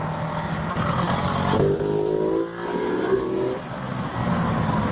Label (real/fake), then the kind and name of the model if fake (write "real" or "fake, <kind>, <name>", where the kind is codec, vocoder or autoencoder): real